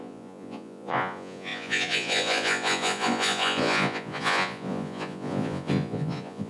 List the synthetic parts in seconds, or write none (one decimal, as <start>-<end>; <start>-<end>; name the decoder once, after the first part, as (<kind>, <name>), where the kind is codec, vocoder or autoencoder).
0.0-6.5 (vocoder, Vocos)